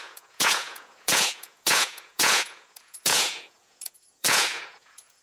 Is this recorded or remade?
remade